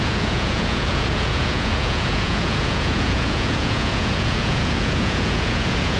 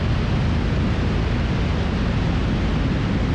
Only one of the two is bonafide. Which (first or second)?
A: second